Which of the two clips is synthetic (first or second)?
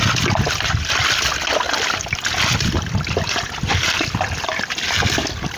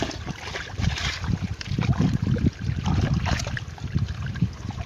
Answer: second